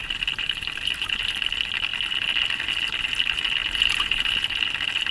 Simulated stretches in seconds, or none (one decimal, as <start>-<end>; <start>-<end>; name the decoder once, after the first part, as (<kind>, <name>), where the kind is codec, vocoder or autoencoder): 0.0-1.2 (vocoder, BigVGAN v2); 3.6-4.3